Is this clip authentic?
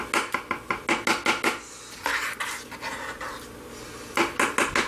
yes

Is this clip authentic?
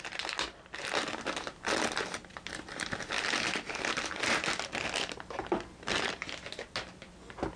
yes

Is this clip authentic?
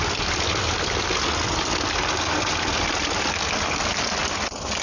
yes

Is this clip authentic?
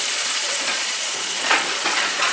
no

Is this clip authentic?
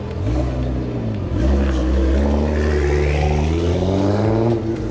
yes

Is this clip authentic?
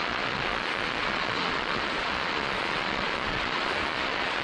no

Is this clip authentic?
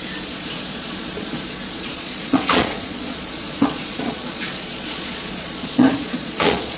no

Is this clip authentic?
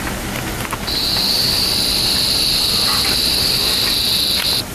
yes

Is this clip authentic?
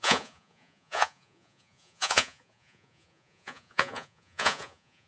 no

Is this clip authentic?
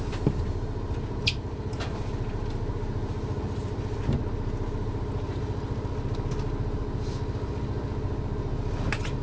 yes